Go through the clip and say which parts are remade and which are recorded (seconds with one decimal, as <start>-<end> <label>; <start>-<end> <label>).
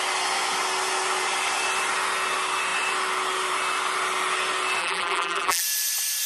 0.0-4.8 recorded; 4.8-5.6 remade; 5.6-6.3 recorded